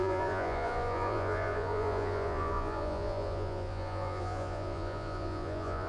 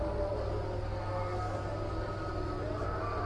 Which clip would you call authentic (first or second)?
second